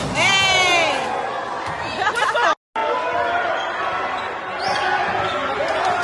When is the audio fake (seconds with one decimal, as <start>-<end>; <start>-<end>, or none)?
none